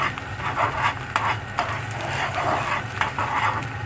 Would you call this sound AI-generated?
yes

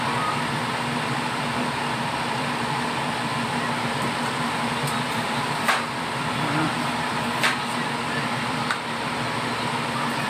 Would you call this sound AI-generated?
yes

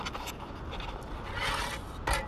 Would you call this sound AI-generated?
no